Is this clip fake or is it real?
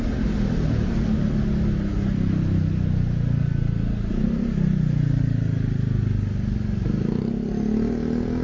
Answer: real